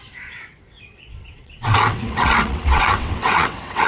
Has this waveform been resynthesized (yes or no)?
yes